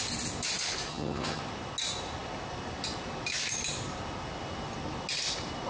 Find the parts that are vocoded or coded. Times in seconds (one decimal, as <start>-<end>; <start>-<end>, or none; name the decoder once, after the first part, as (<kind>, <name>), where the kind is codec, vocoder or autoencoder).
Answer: 0.9-1.4 (vocoder, HiFi-GAN)